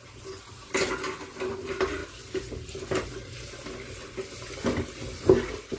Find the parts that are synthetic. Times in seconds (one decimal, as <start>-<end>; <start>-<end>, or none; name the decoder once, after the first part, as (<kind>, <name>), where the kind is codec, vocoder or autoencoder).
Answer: none